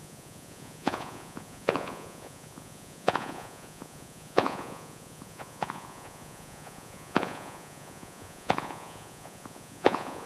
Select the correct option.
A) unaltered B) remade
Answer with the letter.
B